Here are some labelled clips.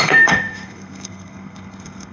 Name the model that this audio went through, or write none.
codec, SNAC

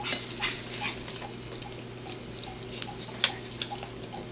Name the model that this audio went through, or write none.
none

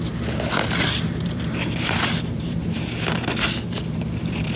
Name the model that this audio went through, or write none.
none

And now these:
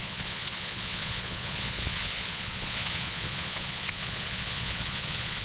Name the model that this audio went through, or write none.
vocoder, Vocos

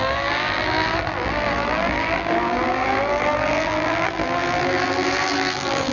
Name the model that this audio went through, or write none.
vocoder, BigVGAN v2